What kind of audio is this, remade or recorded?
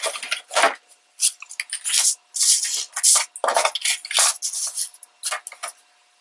recorded